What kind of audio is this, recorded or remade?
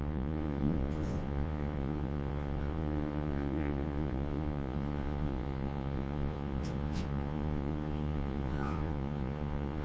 remade